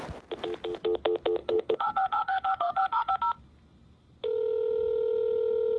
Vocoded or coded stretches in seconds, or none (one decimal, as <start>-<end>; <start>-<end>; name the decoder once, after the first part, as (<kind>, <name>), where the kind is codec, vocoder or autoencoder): 1.4-3.1 (codec, HILCodec)

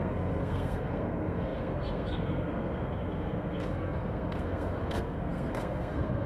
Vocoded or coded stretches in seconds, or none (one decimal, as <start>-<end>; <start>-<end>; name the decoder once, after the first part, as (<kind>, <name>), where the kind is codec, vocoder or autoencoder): 0.0-6.3 (codec, SNAC)

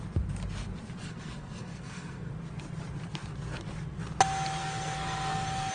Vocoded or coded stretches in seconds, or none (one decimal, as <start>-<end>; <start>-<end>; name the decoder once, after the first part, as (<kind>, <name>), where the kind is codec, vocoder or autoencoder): 1.0-2.3 (codec, SNAC); 4.6-5.7

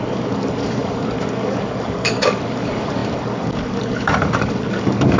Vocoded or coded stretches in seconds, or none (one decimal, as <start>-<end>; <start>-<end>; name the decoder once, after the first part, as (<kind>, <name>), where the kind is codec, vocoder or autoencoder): 0.0-5.2 (codec, DAC)

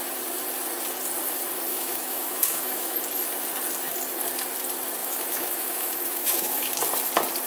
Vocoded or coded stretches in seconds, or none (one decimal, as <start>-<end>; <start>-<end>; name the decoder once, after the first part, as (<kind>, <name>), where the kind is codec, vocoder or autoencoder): 1.7-3.0 (autoencoder, DAC-VAE); 5.0-6.7

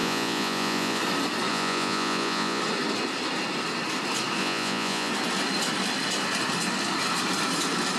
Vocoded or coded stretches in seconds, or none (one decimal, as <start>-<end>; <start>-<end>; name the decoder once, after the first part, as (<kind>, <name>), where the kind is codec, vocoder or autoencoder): 0.0-1.0 (vocoder, Vocos); 1.5-2.6; 4.4-5.1

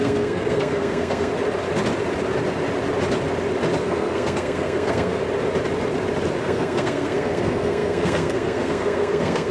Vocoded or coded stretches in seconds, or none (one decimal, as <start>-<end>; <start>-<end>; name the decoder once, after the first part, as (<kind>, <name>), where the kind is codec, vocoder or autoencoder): 0.0-1.3 (codec, SNAC); 3.8-5.2; 6.4-9.5